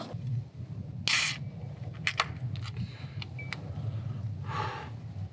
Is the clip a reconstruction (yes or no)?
no